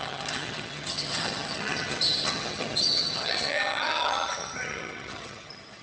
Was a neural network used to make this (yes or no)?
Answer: yes